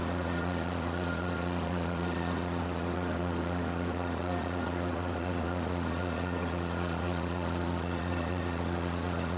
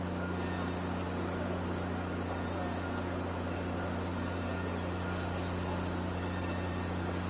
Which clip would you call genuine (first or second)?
second